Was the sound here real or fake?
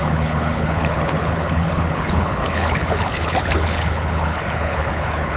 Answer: fake